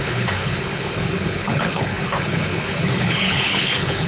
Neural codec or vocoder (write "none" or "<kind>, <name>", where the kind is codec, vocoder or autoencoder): codec, HILCodec